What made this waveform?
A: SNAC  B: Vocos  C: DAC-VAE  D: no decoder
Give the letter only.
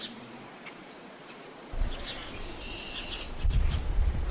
B